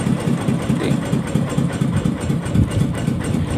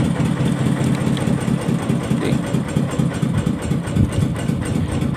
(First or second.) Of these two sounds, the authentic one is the second